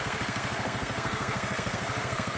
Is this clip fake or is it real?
fake